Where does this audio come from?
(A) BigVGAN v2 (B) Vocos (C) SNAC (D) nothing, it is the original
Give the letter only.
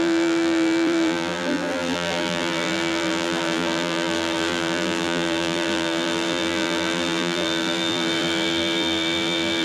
A